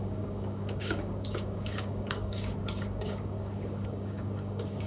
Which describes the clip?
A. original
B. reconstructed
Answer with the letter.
B